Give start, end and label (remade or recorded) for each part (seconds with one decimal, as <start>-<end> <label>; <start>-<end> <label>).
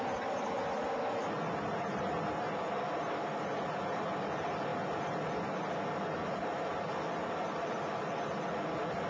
0.0-9.1 recorded